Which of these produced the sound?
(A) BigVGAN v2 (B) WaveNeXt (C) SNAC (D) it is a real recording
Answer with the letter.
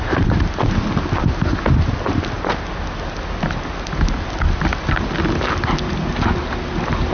D